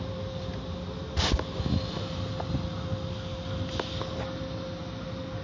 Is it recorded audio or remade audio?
recorded